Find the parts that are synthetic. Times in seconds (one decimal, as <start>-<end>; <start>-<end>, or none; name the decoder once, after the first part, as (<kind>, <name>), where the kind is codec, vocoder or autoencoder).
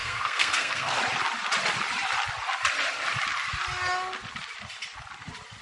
0.0-1.0 (codec, SNAC)